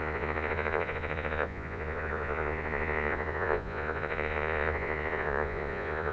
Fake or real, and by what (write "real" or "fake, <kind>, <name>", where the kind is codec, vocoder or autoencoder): fake, vocoder, Vocos